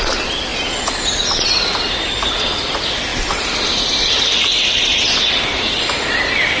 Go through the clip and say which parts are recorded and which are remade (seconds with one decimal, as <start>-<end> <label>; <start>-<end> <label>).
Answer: 0.0-6.6 recorded